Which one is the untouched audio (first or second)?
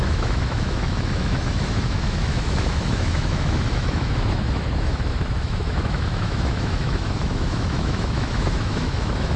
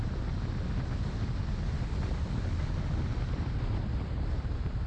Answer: second